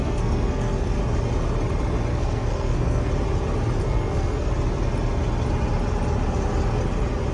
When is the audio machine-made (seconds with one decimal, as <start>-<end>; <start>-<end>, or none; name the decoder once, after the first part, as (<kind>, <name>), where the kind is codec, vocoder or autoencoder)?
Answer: 0.0-1.0 (codec, SNAC); 2.1-3.1; 3.8-4.5